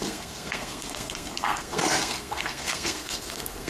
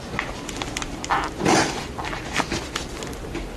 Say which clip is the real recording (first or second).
second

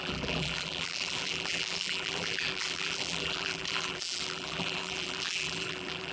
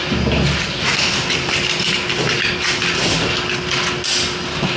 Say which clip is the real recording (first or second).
second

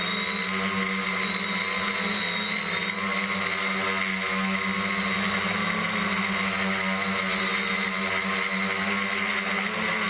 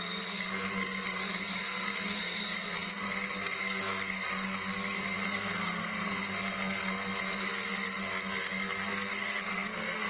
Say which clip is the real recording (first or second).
first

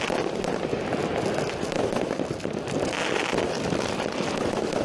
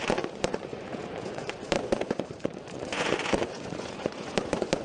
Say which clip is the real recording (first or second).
first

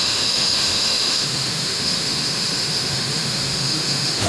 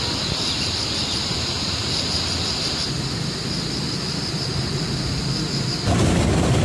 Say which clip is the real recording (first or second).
second